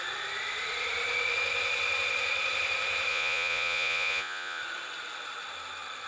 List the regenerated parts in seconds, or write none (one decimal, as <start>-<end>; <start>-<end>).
3.1-4.6

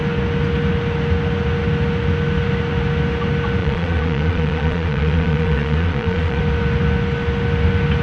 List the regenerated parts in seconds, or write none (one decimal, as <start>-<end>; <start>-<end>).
3.6-6.4

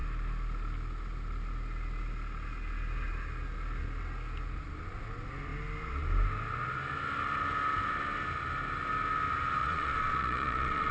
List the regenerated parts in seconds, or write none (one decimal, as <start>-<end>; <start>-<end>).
9.6-10.9